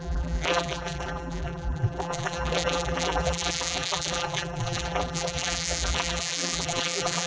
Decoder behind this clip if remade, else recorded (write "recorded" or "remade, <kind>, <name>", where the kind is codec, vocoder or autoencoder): remade, vocoder, BigVGAN v2